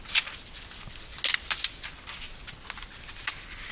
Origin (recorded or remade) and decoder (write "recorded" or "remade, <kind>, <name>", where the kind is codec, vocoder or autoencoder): recorded